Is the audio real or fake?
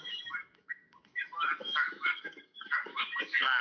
fake